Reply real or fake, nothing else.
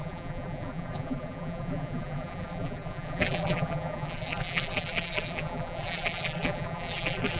fake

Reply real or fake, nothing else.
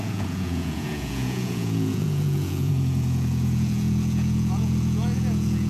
fake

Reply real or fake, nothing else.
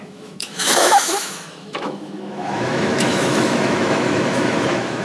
fake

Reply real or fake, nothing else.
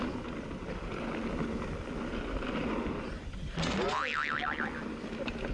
real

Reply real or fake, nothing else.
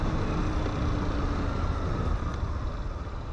real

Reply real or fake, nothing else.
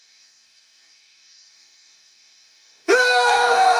fake